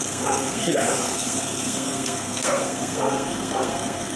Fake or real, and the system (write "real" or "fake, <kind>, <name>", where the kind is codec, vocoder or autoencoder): fake, codec, SNAC